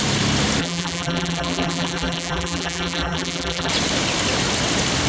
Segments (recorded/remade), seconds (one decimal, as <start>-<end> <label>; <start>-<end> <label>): 0.0-0.6 recorded; 0.6-3.7 remade; 3.7-5.1 recorded

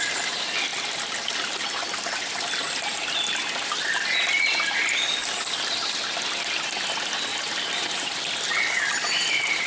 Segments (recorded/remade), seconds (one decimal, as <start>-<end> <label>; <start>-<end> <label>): 0.0-7.3 recorded; 7.3-8.2 remade; 8.2-9.7 recorded

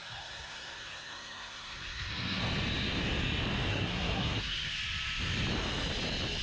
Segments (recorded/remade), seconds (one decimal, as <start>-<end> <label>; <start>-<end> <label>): 0.0-2.4 remade; 2.4-3.7 recorded; 3.7-4.7 remade; 4.7-6.4 recorded

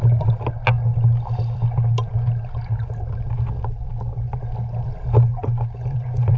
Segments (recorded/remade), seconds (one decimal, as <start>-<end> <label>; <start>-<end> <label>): 0.0-5.3 recorded; 5.3-6.4 remade